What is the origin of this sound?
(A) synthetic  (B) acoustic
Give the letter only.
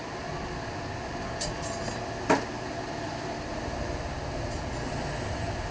B